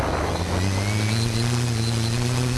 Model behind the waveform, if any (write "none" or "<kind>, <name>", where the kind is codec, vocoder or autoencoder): none